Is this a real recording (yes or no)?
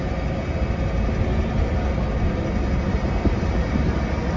yes